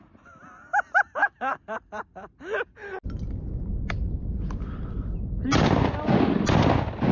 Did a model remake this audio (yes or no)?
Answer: no